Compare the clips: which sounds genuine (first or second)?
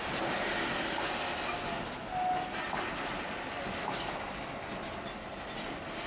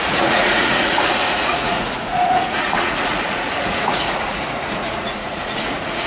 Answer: first